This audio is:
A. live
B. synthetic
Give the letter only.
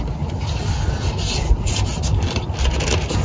A